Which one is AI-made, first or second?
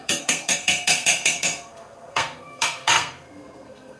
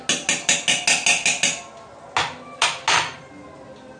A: first